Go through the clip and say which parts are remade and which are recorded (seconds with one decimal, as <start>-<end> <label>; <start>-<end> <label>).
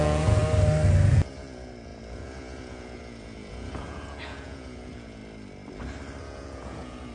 0.0-0.4 remade; 0.4-1.1 recorded; 1.1-5.2 remade; 5.2-6.2 recorded; 6.2-7.1 remade